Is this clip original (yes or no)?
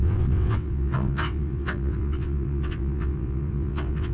no